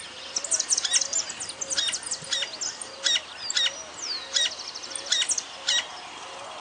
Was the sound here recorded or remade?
recorded